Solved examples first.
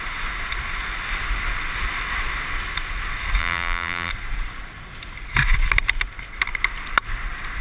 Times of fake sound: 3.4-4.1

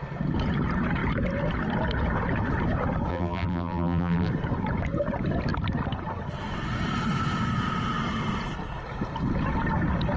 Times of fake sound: 3.1-4.3

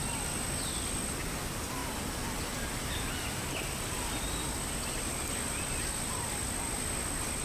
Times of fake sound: none

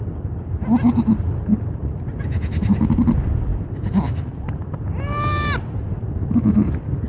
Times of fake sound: none

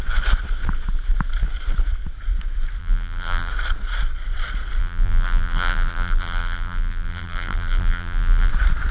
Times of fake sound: 2.8-3.5; 4.8-8.5

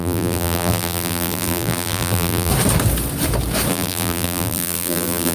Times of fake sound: 0.0-2.5; 3.7-5.3

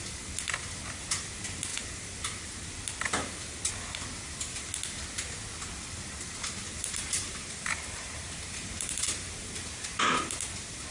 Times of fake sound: 6.8-10.3

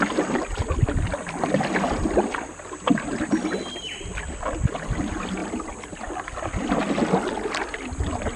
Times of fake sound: none